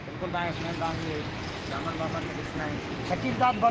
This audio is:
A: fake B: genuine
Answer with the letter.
A